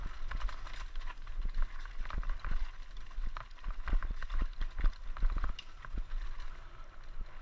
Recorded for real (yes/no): yes